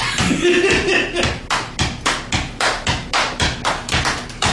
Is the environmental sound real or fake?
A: real